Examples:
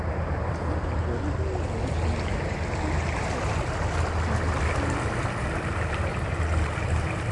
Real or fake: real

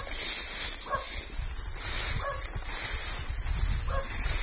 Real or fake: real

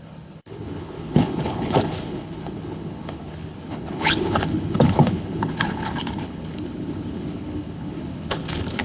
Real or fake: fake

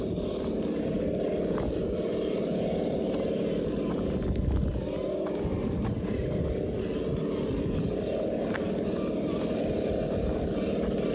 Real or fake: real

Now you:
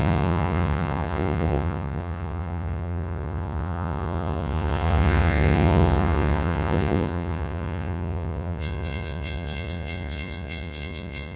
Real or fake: fake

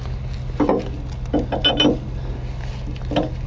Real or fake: real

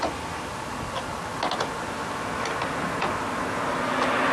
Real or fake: real